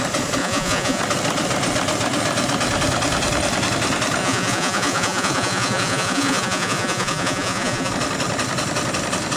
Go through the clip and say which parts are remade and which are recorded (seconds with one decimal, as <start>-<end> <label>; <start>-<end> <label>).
0.0-0.4 recorded; 0.4-1.0 remade; 1.0-4.2 recorded; 4.2-7.9 remade; 7.9-9.4 recorded